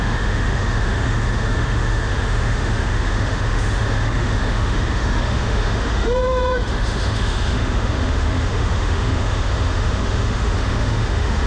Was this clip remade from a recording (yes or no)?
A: yes